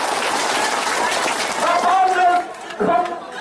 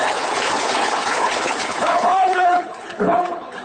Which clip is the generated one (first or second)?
second